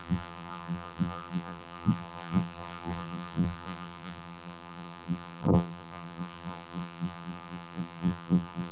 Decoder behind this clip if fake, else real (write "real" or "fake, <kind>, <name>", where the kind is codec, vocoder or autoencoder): fake, vocoder, BigVGAN v2